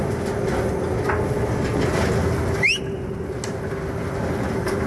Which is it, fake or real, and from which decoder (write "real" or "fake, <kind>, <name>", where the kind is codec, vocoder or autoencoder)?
real